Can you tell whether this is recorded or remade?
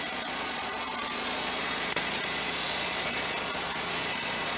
remade